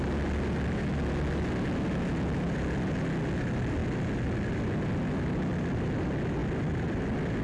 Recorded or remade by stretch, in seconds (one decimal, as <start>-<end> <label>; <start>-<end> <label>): 0.0-7.4 recorded